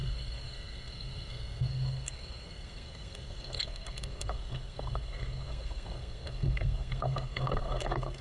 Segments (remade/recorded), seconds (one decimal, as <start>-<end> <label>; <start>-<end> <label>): 0.0-8.2 remade